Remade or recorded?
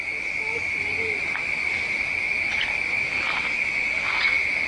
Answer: recorded